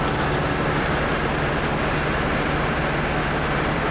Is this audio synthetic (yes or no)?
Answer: no